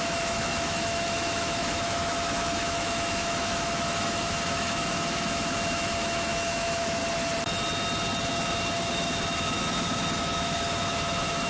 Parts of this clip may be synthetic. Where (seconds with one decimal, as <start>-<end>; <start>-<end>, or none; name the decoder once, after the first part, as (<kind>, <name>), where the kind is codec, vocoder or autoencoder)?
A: 0.0-7.0 (autoencoder, DAC-VAE); 8.2-11.5